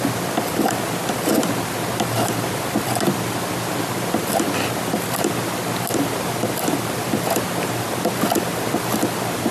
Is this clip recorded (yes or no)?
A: yes